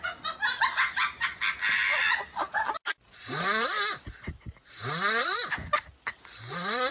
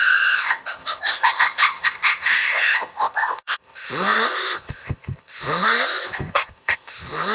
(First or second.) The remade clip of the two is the second